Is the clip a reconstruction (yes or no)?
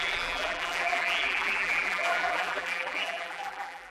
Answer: yes